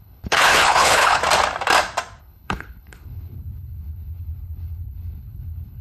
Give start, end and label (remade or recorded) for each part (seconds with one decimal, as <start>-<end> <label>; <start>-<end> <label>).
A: 0.0-1.2 remade; 1.2-2.2 recorded; 2.2-5.8 remade